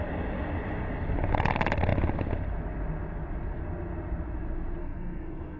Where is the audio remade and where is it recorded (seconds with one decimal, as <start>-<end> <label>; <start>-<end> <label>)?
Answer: 0.0-4.8 recorded; 4.8-5.6 remade